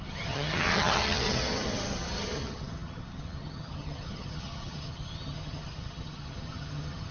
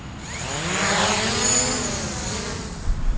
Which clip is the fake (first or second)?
first